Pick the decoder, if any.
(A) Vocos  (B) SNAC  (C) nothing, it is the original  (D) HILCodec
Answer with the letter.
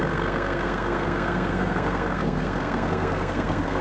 B